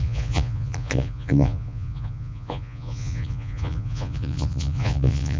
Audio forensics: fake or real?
fake